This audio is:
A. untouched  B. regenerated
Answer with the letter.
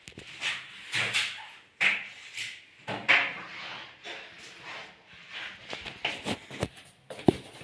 A